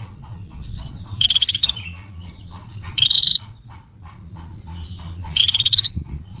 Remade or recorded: remade